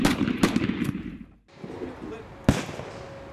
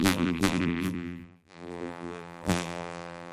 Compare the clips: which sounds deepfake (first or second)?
second